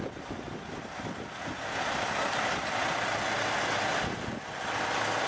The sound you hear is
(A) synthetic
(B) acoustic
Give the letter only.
B